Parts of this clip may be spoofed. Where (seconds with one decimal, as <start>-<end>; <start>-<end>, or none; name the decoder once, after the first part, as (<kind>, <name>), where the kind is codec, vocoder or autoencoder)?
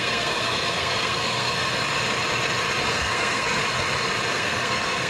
0.0-1.7 (codec, SNAC); 2.9-3.6; 4.3-5.1